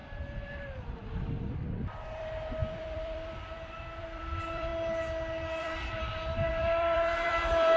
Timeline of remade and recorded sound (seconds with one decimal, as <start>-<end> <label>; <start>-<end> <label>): 0.0-1.4 recorded; 1.4-4.7 remade; 4.7-5.6 recorded; 5.6-7.8 remade